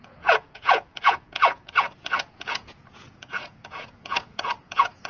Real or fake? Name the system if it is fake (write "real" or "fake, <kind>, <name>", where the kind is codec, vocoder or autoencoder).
fake, vocoder, Vocos